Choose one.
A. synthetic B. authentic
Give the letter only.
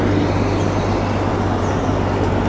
B